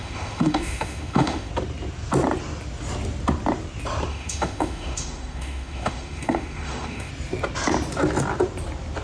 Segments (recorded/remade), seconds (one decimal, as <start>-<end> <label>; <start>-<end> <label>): 0.0-1.5 remade; 1.5-4.1 recorded; 4.1-7.1 remade; 7.1-9.0 recorded